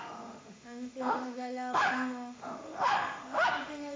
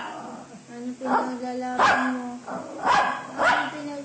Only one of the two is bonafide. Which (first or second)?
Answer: second